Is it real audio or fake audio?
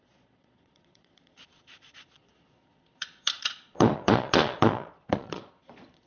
fake